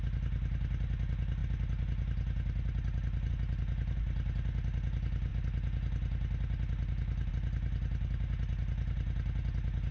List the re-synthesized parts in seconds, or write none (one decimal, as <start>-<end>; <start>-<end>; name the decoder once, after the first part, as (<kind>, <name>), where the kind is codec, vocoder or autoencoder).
none